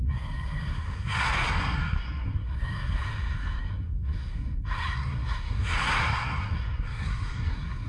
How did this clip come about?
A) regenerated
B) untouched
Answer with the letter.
A